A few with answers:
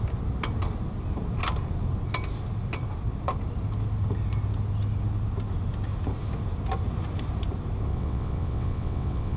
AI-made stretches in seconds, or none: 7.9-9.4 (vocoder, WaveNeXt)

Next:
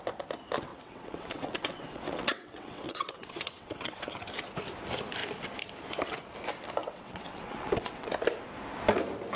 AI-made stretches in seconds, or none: 0.7-4.2 (vocoder, WaveNeXt); 6.8-8.1

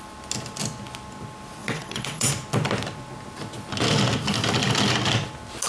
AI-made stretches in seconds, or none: 1.6-2.3 (vocoder, WaveNeXt)